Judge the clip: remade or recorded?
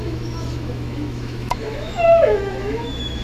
remade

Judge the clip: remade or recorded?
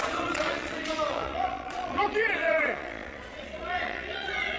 remade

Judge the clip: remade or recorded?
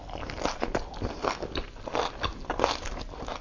recorded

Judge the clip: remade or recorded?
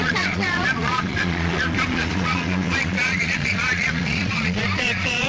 remade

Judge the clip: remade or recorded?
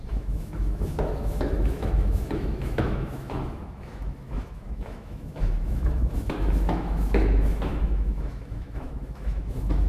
remade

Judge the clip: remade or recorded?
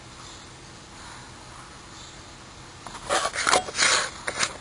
recorded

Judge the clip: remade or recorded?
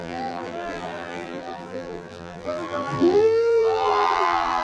remade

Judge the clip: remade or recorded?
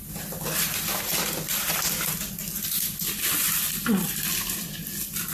recorded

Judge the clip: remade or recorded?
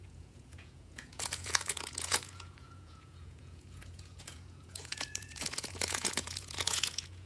remade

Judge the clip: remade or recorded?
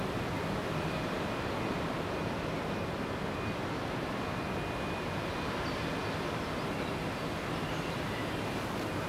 recorded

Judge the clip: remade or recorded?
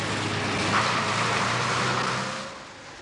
recorded